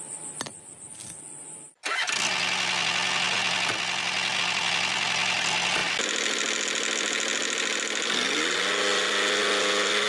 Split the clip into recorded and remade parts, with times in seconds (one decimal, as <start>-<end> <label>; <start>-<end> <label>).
0.0-10.1 recorded